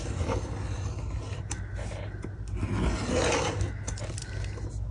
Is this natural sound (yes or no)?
yes